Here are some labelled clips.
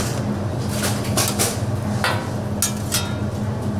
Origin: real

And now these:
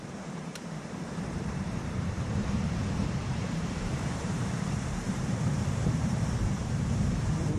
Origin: fake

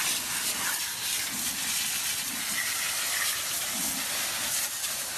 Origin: real